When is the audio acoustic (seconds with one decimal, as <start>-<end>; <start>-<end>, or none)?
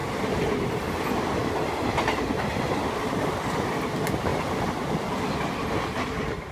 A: 0.0-1.4; 3.3-6.5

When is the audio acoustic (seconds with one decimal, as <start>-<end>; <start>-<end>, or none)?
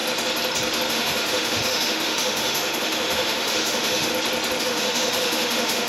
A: 0.0-0.9; 4.1-4.6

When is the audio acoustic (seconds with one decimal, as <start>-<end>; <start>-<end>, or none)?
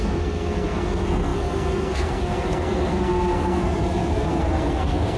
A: none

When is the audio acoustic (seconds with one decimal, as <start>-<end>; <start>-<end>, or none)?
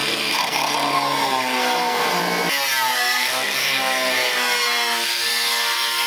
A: 2.2-2.9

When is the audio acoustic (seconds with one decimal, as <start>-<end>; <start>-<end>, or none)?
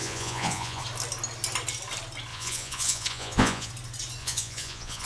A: 0.8-2.3; 3.7-4.2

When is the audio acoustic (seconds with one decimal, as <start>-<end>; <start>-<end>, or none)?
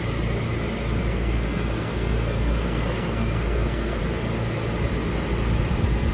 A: 0.0-1.0; 4.0-6.1